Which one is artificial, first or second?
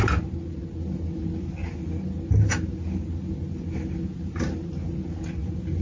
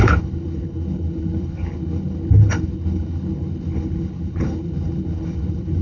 second